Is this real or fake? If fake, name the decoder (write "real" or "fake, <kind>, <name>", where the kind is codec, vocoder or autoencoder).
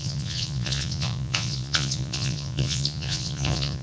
fake, vocoder, Vocos